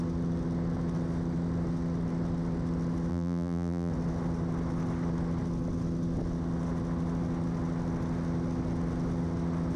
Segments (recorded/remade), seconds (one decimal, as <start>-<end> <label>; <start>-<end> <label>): 0.0-3.1 recorded; 3.1-3.9 remade; 3.9-9.8 recorded